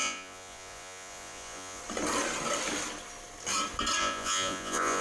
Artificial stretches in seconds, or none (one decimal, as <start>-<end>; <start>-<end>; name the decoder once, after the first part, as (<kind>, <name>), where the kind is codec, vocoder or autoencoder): 0.0-1.8 (vocoder, Vocos); 4.0-5.0